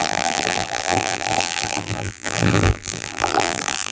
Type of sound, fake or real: fake